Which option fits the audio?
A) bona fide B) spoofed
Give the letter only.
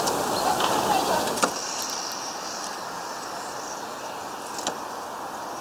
A